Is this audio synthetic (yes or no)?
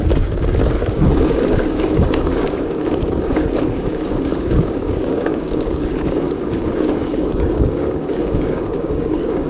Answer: yes